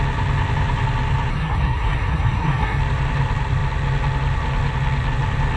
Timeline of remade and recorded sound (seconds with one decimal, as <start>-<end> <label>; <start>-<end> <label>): 0.0-1.3 recorded; 1.3-2.8 remade; 2.8-5.6 recorded